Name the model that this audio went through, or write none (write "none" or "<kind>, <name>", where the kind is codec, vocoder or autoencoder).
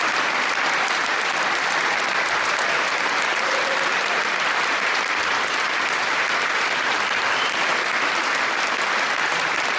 vocoder, BigVGAN v2